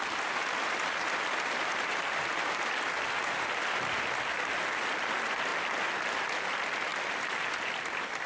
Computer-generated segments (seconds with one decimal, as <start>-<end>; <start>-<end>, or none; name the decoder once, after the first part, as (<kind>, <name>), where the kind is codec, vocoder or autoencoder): 0.0-8.3 (vocoder, BigVGAN v2)

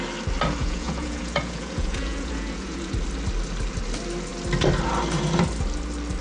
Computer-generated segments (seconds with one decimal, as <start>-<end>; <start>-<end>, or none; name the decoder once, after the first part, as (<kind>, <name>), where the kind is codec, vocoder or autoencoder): 0.6-2.9 (vocoder, Vocos)